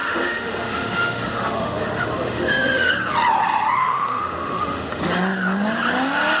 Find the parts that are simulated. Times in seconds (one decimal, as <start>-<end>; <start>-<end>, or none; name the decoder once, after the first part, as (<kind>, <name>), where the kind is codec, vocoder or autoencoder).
0.0-2.9 (autoencoder, DAC-VAE); 3.8-5.0

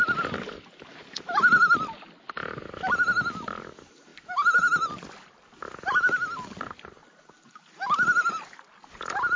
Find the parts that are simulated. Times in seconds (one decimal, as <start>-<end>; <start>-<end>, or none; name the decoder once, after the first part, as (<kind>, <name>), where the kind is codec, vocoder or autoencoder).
none